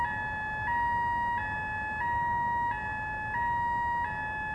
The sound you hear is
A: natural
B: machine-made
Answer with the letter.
A